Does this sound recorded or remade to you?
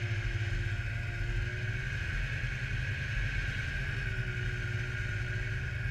recorded